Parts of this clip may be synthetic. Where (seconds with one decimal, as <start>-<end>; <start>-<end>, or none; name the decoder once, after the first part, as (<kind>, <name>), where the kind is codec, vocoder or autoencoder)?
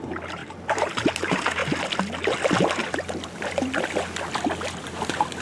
0.0-1.6 (vocoder, BigVGAN v2); 4.8-5.4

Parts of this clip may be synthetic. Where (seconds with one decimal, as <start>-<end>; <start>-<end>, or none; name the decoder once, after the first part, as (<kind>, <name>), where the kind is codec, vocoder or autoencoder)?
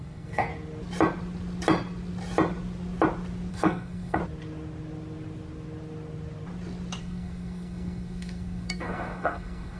0.0-0.5 (codec, SNAC); 3.5-4.2; 7.0-9.8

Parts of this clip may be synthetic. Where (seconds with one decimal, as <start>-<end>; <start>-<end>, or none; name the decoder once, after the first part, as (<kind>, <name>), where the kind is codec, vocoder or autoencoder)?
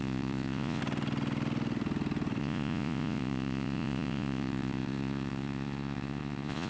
0.0-0.8 (vocoder, Vocos); 2.4-6.7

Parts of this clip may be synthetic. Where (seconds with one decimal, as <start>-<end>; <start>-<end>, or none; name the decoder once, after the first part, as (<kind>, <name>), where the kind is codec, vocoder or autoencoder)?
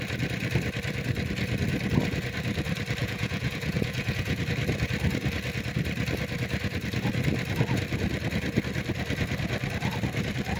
3.0-4.4 (vocoder, Vocos)